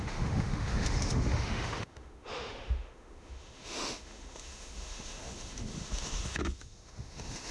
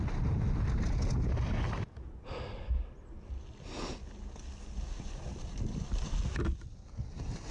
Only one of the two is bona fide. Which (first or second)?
second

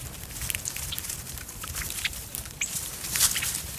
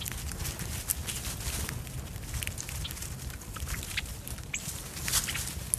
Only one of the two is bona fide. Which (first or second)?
second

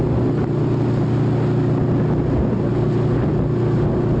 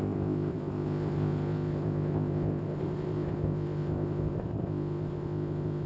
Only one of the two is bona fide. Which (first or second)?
first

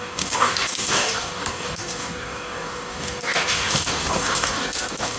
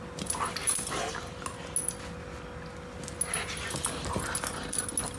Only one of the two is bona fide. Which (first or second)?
second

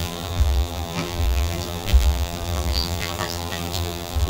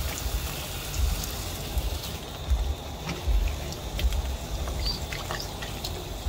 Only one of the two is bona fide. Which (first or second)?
second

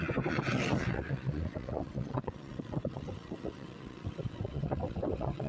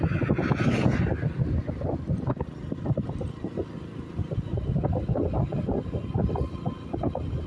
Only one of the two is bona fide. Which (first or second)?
second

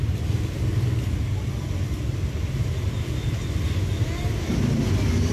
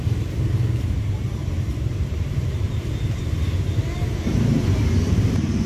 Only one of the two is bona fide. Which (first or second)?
first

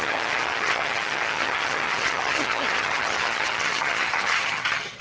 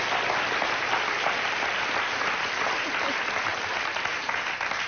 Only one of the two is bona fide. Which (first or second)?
second